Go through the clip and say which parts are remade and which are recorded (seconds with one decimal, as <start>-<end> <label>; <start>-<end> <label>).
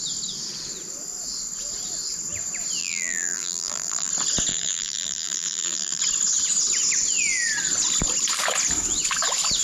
0.0-2.8 recorded; 2.8-4.1 remade; 4.1-4.5 recorded; 4.5-6.0 remade; 6.0-9.6 recorded